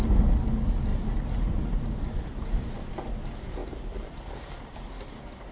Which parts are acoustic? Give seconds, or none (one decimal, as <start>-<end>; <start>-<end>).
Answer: 0.0-0.9; 2.9-3.6; 5.1-5.5